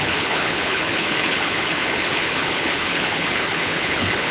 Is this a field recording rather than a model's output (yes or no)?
no